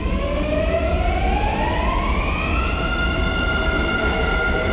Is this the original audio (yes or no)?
yes